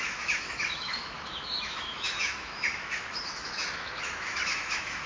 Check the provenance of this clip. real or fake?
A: fake